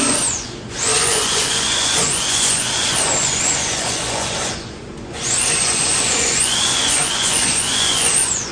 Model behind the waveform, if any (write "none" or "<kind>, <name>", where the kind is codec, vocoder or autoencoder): vocoder, Vocos